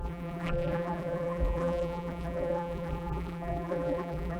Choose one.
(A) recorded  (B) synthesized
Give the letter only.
B